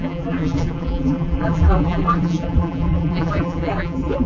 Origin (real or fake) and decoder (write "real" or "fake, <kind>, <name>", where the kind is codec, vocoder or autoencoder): fake, vocoder, BigVGAN v2